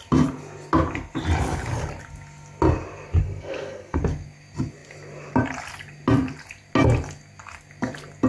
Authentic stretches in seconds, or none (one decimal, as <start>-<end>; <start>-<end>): 0.0-3.2; 4.0-8.3